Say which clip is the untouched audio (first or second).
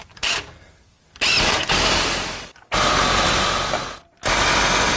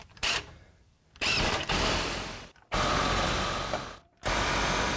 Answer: first